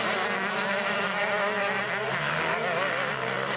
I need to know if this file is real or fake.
real